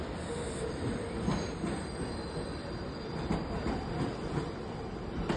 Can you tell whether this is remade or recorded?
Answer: recorded